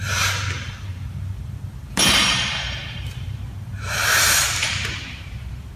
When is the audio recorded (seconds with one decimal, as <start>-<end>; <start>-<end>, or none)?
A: none